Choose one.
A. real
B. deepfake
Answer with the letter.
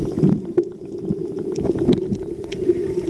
A